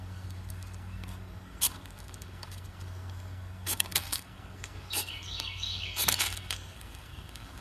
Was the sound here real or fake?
fake